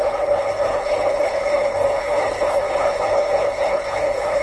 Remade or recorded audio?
remade